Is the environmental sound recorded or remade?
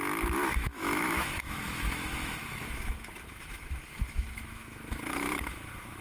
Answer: remade